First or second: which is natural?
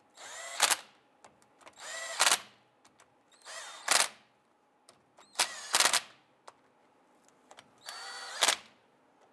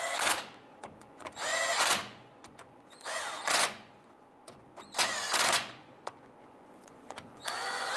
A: first